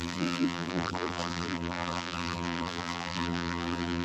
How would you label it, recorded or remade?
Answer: remade